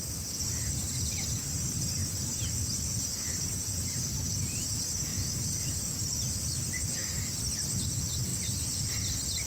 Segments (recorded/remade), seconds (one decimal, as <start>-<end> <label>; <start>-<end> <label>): 0.0-2.0 recorded; 2.0-4.3 remade; 4.3-5.1 recorded; 5.1-7.4 remade; 7.4-9.5 recorded